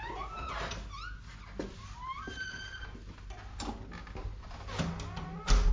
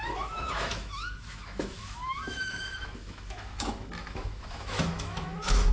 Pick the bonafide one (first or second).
first